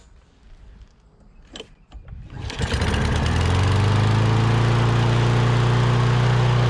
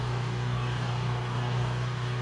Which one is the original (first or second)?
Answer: first